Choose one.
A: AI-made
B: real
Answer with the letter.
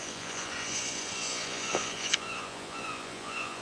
A